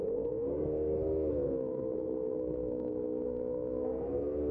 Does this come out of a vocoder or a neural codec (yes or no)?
yes